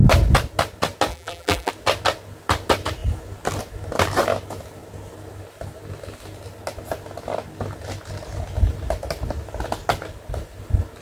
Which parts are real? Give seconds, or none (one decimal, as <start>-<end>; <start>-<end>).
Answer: 0.0-1.1; 1.7-11.0